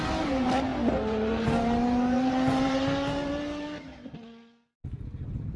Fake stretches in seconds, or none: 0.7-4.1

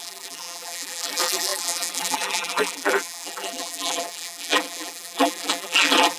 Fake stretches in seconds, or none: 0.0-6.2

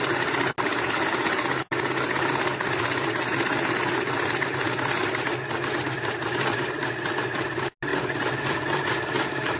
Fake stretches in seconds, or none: 7.9-9.6

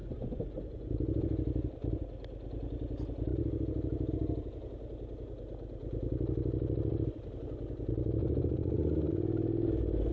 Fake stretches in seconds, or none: 0.0-0.9; 8.2-9.1

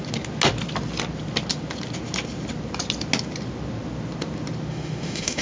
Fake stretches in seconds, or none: 4.7-5.4

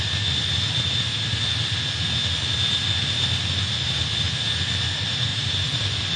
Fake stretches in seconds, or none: 5.3-5.8

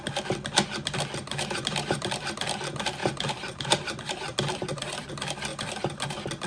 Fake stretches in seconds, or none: 1.2-2.2; 3.0-5.1; 5.5-6.1